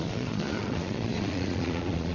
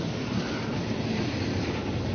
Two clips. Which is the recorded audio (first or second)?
second